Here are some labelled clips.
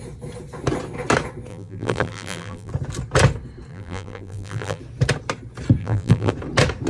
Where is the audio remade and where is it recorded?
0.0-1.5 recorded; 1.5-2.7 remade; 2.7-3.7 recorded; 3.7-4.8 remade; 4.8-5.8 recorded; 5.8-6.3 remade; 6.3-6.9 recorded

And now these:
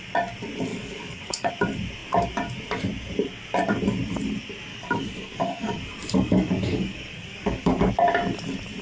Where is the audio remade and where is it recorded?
0.0-0.7 recorded; 0.7-1.5 remade; 1.5-4.7 recorded; 4.7-7.9 remade; 7.9-8.8 recorded

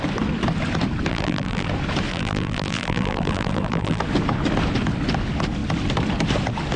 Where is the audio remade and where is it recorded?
0.0-1.1 recorded; 1.1-1.7 remade; 1.7-2.1 recorded; 2.1-4.0 remade; 4.0-6.8 recorded

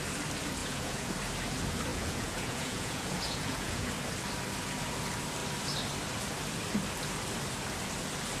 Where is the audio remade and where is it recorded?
0.0-0.6 recorded; 0.6-1.1 remade; 1.1-1.9 recorded; 1.9-3.9 remade; 3.9-8.4 recorded

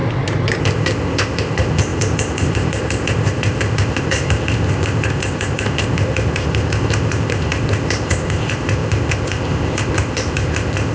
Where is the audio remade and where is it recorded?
0.0-0.6 recorded; 0.6-10.9 remade

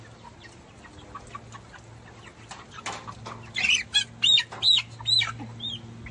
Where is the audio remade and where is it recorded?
0.0-6.1 recorded